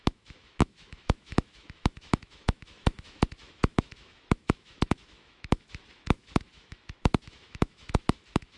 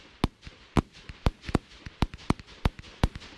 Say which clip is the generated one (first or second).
first